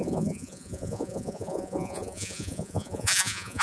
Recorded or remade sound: remade